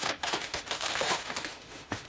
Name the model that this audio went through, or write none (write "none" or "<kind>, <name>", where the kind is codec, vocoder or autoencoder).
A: autoencoder, DAC-VAE